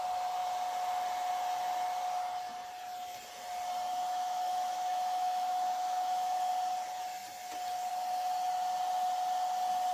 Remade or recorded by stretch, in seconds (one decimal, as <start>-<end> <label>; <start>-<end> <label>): 0.0-3.9 recorded; 3.9-6.5 remade; 6.5-9.9 recorded